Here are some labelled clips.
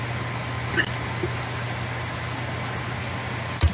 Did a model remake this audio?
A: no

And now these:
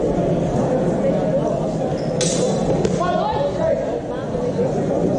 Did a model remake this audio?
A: no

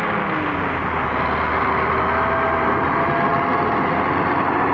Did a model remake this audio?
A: no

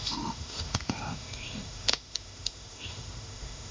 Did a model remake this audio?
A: yes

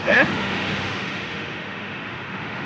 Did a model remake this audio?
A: yes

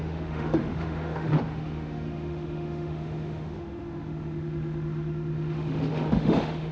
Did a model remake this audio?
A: yes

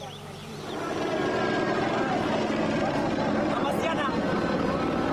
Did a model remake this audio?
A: no